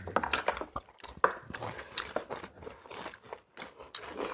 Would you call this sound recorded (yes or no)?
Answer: yes